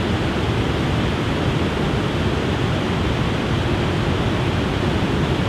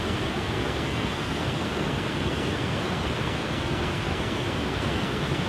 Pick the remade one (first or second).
second